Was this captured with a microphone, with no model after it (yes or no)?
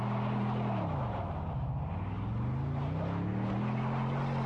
yes